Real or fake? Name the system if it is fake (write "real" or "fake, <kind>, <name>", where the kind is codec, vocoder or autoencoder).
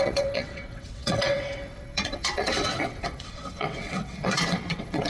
fake, vocoder, WaveNeXt